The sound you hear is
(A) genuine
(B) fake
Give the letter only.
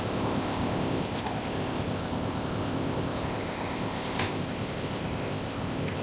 B